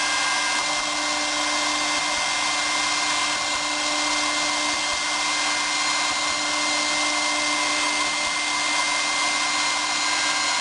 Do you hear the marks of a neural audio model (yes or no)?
no